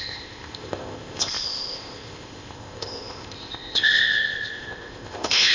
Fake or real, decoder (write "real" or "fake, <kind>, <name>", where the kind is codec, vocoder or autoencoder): fake, codec, ZipCodec